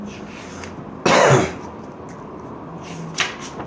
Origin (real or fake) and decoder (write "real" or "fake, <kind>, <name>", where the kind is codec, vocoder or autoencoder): real